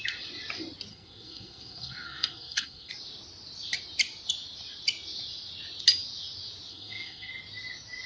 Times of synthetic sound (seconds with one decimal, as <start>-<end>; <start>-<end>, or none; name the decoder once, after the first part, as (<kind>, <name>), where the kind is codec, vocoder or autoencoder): 0.9-2.9 (codec, SNAC); 6.7-7.3